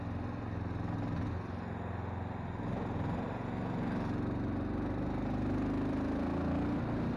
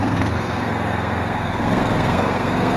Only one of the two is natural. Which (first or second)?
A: first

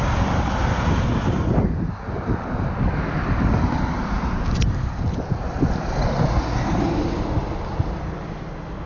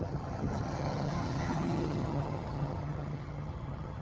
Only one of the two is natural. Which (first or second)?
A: first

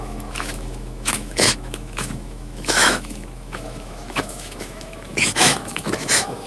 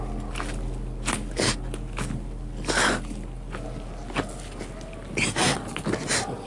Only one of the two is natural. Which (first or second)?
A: second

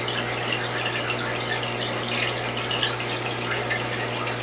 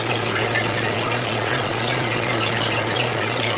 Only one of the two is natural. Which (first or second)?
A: first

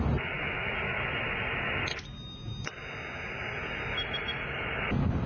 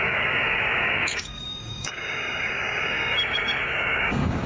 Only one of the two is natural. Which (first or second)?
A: first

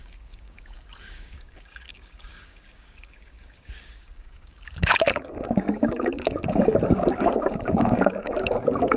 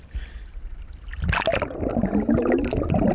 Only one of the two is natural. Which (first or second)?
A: second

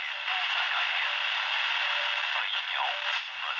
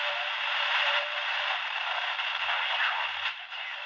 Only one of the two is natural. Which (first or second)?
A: first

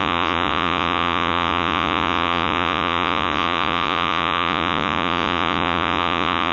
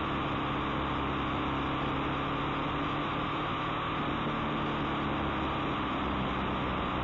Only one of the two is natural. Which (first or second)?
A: second